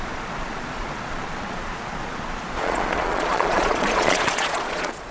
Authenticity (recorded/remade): remade